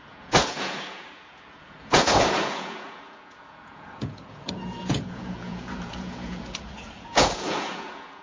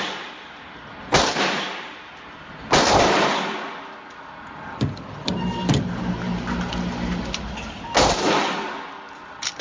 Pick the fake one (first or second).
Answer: first